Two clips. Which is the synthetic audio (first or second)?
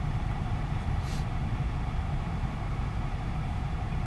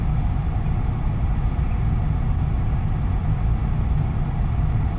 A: first